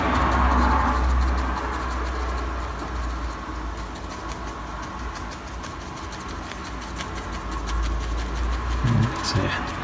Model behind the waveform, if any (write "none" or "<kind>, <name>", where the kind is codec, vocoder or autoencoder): none